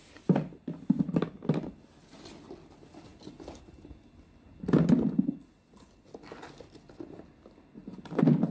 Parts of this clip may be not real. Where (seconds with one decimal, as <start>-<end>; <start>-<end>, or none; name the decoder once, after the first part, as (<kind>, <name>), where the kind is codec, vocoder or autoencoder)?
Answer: none